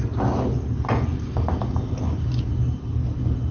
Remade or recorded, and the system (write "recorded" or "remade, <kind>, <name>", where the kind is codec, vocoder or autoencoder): recorded